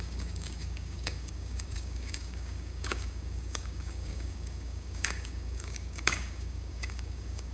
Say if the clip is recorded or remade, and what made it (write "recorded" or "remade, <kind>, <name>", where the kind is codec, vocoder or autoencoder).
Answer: remade, codec, DAC